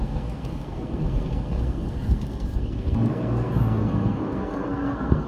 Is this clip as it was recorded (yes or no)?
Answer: no